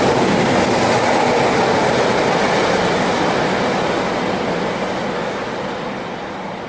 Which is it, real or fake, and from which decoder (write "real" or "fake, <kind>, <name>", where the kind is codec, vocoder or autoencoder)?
real